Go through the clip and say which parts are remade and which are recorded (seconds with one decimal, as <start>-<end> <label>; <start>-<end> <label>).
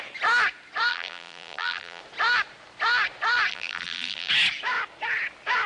0.0-0.9 recorded; 0.9-2.0 remade; 2.0-3.5 recorded; 3.5-4.3 remade; 4.3-5.7 recorded